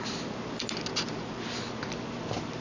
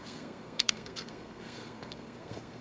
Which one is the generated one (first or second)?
second